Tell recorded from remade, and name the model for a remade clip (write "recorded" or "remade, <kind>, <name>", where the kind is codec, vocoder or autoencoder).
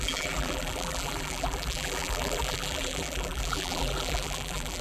remade, vocoder, BigVGAN v2